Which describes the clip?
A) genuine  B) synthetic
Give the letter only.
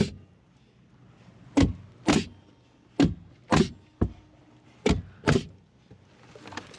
A